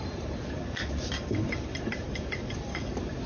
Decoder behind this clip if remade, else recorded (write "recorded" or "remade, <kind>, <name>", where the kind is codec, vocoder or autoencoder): remade, vocoder, BigVGAN v2